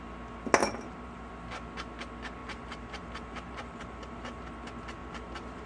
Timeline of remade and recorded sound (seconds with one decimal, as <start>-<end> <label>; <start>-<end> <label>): 0.0-0.6 recorded; 0.6-1.3 remade; 1.3-2.4 recorded; 2.4-4.4 remade; 4.4-5.0 recorded; 5.0-5.7 remade